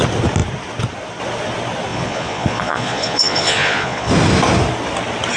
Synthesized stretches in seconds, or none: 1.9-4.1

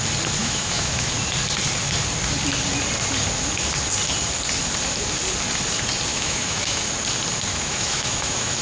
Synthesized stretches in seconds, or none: 0.4-1.1; 6.1-6.8; 7.5-8.6

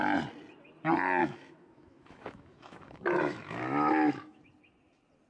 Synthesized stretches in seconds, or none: 1.2-4.4

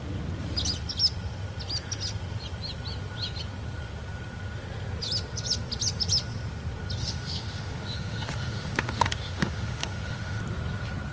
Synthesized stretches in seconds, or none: 7.0-10.4

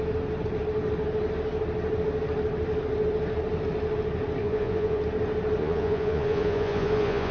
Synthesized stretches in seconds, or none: 4.4-5.0; 5.6-7.3

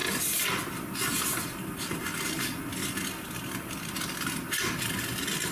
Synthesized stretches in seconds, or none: none

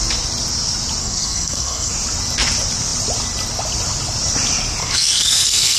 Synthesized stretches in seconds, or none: 1.0-1.9; 4.8-5.8

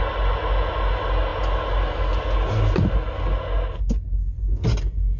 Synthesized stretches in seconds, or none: none